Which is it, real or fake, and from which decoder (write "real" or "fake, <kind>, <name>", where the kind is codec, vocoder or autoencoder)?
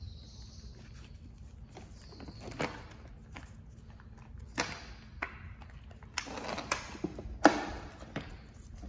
real